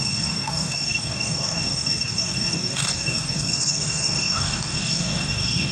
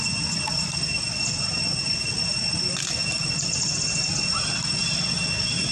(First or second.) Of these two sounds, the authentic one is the second